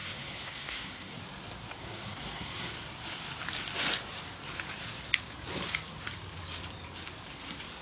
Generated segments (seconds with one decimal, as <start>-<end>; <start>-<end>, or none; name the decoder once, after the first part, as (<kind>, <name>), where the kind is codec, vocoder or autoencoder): 0.0-1.2 (codec, SNAC); 1.8-2.7